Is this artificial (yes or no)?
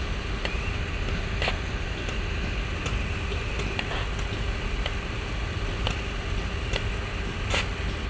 no